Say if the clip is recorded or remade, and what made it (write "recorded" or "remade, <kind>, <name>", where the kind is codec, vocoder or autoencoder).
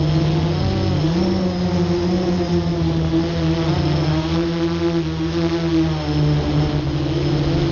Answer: recorded